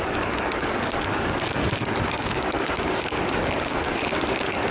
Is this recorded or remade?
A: remade